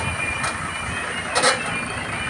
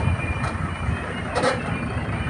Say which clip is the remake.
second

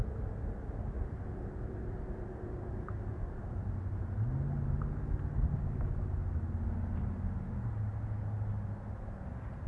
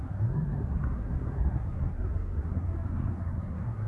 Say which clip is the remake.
second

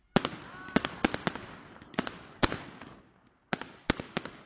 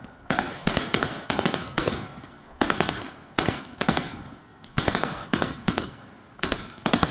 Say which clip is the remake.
second